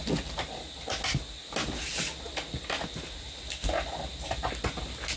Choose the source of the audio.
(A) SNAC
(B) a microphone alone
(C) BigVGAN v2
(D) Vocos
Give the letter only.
B